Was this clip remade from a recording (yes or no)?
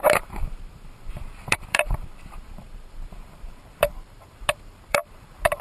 yes